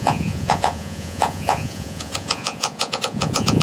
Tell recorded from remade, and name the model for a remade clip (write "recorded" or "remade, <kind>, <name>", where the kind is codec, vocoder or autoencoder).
remade, vocoder, Vocos